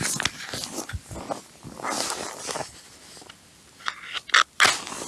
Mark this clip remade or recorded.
recorded